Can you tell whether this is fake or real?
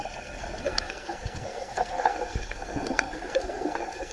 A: fake